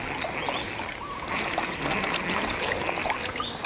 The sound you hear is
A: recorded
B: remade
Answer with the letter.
A